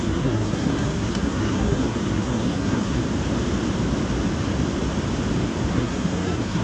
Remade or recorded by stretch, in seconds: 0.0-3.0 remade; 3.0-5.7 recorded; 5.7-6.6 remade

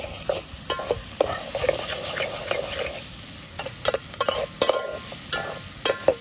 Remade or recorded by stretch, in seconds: 0.0-6.2 recorded